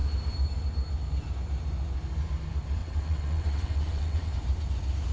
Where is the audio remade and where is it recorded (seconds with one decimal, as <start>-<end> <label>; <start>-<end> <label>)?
0.0-2.8 recorded; 2.8-4.3 remade; 4.3-5.1 recorded